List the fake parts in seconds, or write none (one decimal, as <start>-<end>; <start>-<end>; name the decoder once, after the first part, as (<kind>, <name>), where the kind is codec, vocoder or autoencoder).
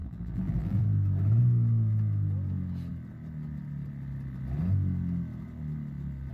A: 0.0-0.8 (vocoder, BigVGAN v2)